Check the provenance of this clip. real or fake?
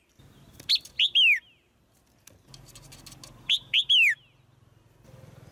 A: real